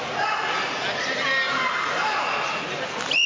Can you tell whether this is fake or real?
real